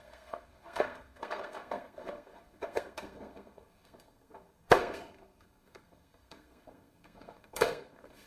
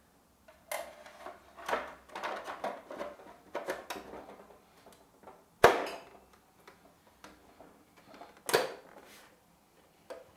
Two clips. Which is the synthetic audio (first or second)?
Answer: first